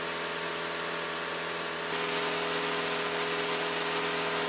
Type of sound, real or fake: real